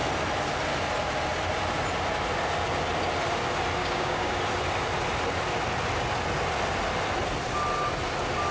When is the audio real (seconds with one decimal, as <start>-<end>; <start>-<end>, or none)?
0.0-3.8; 4.4-8.5